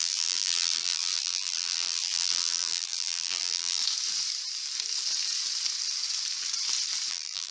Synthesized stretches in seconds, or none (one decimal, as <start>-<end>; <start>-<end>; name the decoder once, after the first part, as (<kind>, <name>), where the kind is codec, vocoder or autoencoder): 0.0-3.8 (vocoder, BigVGAN v2); 7.1-7.5

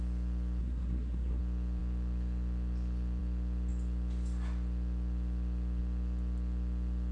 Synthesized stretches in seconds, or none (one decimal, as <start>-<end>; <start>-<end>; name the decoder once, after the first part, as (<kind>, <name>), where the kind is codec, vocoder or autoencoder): 0.6-1.4 (codec, SNAC)